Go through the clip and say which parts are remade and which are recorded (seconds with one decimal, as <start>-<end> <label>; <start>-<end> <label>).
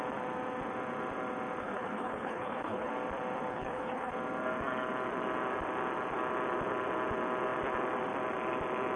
0.0-1.6 recorded; 1.6-2.9 remade; 2.9-3.5 recorded; 3.5-4.1 remade; 4.1-9.0 recorded